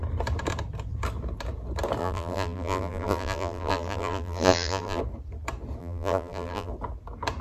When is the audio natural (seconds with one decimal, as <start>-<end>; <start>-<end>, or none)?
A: 0.0-2.0; 5.0-5.8; 6.7-7.4